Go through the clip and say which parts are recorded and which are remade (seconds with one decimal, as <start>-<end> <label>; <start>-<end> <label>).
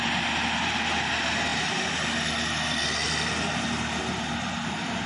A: 0.0-5.1 recorded